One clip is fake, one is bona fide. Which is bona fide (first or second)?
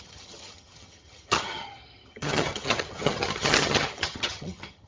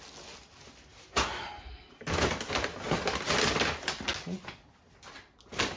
second